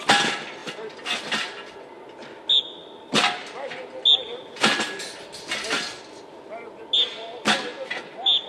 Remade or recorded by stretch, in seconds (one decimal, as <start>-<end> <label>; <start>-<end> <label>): 0.0-8.5 recorded